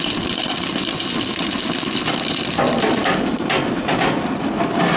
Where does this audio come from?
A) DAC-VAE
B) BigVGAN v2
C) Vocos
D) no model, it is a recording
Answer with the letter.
B